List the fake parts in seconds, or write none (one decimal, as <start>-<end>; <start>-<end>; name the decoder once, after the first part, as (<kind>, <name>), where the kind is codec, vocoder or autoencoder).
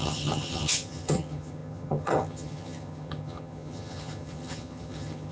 0.0-5.3 (vocoder, HiFi-GAN)